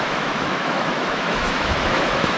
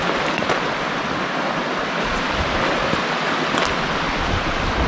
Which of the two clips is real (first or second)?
second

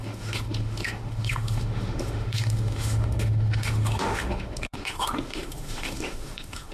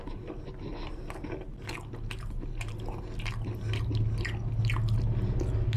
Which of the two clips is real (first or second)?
second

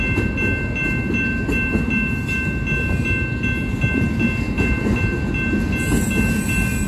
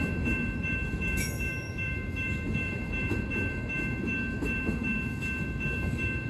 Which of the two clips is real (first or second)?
first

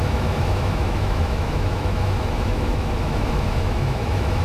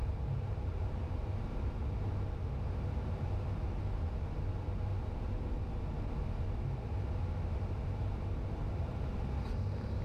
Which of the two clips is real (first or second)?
second